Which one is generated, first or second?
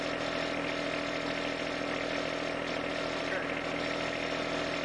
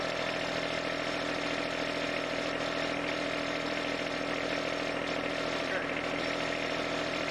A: second